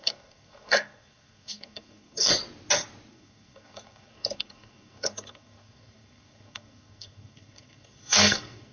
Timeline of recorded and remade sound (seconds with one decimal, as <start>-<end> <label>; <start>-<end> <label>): 0.0-2.3 remade; 2.3-3.1 recorded; 3.1-8.7 remade